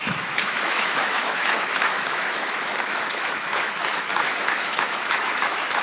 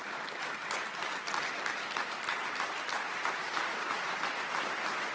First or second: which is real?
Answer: second